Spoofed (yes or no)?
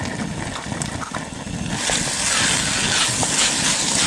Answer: no